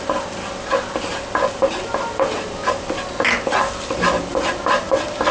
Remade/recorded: recorded